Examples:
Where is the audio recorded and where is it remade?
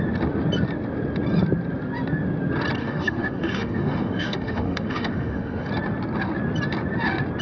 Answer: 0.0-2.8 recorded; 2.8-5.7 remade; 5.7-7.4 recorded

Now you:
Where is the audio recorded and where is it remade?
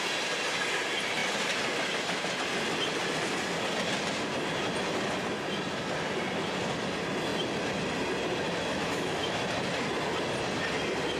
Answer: 0.0-8.7 recorded; 8.7-9.4 remade; 9.4-11.2 recorded